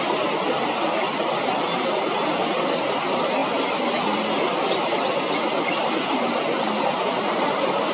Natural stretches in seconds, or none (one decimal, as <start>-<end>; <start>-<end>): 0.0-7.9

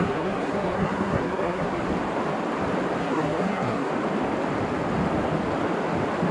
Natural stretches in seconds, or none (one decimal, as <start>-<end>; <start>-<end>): 1.8-3.0; 3.9-6.3

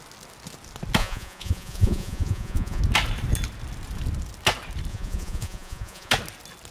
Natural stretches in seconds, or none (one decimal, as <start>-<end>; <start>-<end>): 0.0-1.0; 2.8-4.9; 6.1-6.7